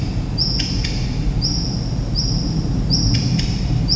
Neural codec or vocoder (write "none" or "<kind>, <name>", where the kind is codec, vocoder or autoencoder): none